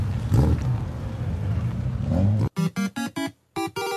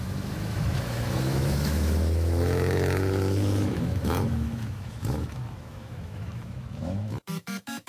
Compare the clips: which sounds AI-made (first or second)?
second